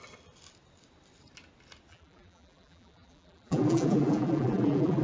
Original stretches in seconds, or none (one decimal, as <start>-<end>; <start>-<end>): 0.0-1.9